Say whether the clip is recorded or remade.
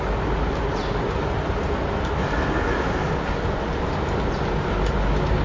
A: recorded